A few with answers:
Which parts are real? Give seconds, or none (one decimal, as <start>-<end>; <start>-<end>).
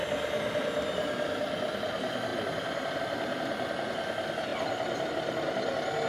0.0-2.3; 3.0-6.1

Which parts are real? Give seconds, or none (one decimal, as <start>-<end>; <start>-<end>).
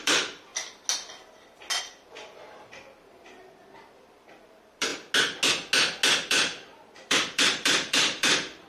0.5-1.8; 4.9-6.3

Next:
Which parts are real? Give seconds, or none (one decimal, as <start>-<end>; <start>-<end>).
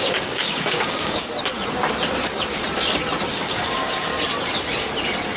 1.3-3.3; 4.1-5.4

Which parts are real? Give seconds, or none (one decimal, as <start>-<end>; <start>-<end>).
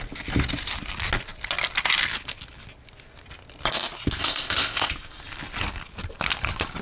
0.0-4.2; 4.9-6.8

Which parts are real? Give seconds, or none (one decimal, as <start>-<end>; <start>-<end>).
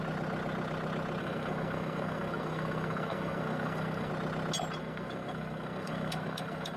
0.0-1.2; 4.1-4.8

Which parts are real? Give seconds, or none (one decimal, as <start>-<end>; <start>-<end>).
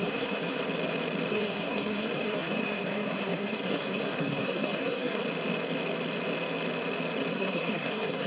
0.6-1.3; 5.2-7.3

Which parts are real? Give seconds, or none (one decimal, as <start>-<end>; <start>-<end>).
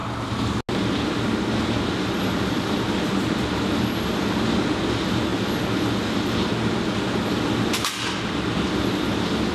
0.0-9.5